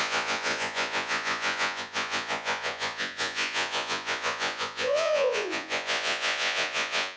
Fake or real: fake